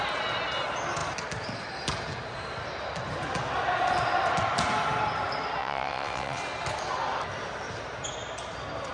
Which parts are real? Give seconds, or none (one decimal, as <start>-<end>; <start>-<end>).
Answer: 0.0-5.6; 6.4-8.9